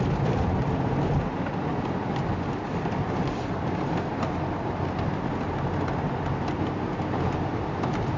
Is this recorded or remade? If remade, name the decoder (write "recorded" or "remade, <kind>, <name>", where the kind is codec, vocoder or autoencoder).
recorded